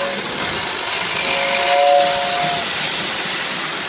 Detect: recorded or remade recorded